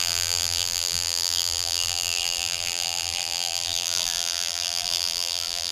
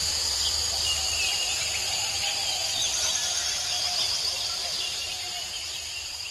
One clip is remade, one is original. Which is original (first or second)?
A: second